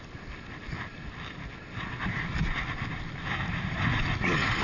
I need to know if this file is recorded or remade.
recorded